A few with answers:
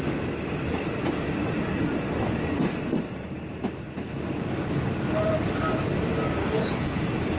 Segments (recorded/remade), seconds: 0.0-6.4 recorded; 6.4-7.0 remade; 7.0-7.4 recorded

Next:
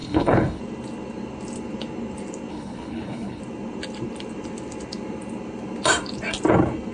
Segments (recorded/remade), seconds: 0.0-0.6 remade; 0.6-2.5 recorded; 2.5-3.4 remade; 3.4-6.9 recorded

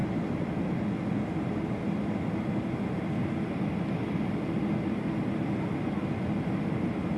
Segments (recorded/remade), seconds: 0.0-7.2 recorded

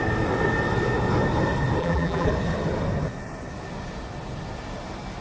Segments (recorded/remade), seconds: 0.0-1.8 recorded; 1.8-2.3 remade; 2.3-5.2 recorded

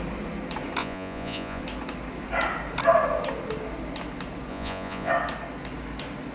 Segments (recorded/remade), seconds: 0.0-0.8 recorded; 0.8-1.6 remade; 1.6-4.5 recorded; 4.5-5.1 remade; 5.1-6.3 recorded

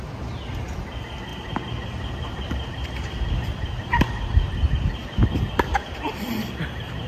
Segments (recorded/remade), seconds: 0.0-7.1 recorded